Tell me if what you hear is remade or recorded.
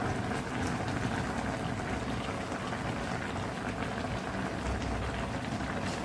recorded